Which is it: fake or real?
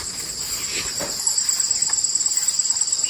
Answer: real